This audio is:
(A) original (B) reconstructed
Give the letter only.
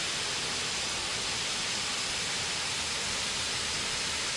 A